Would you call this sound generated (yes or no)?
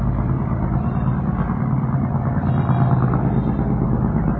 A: no